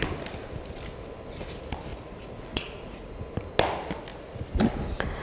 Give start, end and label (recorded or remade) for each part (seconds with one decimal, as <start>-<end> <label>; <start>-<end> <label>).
0.0-1.9 recorded; 1.9-3.1 remade; 3.1-5.2 recorded